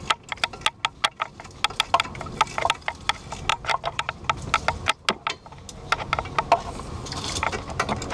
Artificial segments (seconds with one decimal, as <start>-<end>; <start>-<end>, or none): 3.5-4.2